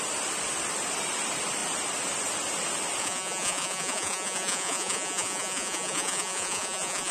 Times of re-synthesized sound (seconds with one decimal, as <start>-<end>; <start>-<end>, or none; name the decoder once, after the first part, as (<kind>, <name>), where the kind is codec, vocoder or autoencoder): 3.0-7.1 (vocoder, Vocos)

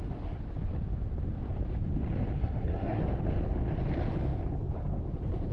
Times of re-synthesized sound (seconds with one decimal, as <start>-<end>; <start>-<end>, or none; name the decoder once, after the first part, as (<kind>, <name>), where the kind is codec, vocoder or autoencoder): 2.4-3.0 (codec, SNAC)

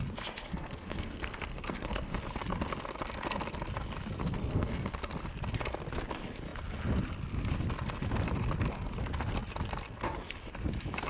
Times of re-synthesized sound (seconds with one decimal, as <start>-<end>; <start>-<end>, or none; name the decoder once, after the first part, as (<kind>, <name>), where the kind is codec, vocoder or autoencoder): 0.5-2.2 (codec, SNAC); 4.2-5.1

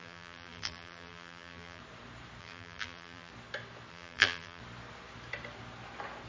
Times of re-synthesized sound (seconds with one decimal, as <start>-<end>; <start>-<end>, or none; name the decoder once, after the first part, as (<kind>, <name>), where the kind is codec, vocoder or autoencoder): 0.0-1.8 (vocoder, BigVGAN v2); 2.4-3.3; 3.9-4.6

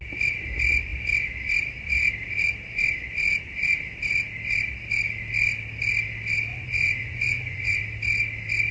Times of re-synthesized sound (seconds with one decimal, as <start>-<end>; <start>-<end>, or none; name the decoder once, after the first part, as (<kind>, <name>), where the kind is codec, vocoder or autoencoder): 6.5-7.8 (vocoder, Vocos)